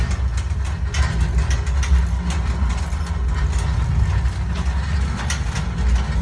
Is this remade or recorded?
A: recorded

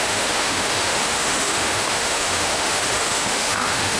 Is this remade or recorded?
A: remade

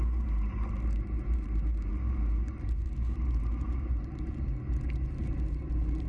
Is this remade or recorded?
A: remade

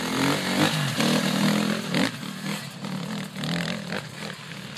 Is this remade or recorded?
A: recorded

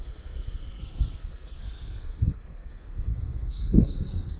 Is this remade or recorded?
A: remade